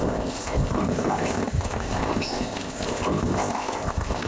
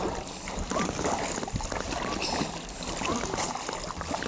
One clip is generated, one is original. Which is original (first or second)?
second